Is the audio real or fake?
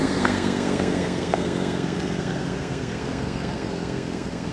fake